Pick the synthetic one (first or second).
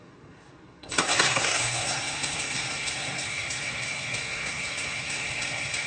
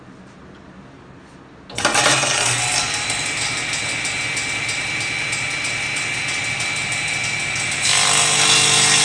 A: first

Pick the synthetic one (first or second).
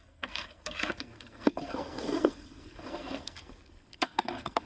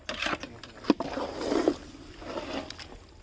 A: first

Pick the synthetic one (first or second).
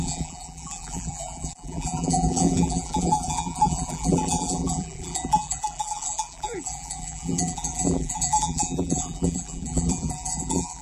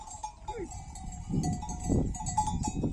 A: first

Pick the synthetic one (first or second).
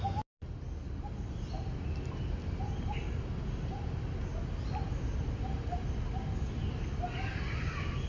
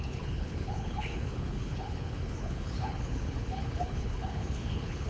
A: second